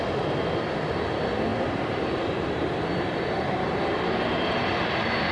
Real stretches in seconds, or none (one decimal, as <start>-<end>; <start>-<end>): 0.0-1.5; 4.5-5.3